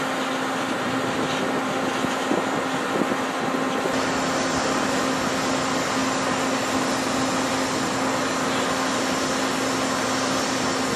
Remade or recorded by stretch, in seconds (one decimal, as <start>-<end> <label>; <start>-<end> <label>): 0.0-11.0 recorded